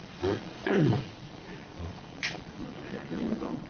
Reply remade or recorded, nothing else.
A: remade